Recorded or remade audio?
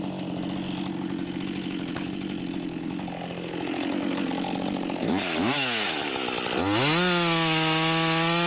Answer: recorded